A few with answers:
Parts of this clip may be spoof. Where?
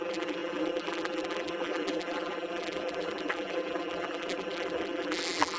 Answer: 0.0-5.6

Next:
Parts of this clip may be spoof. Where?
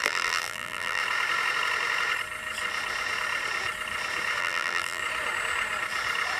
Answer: 0.0-1.0; 4.4-5.0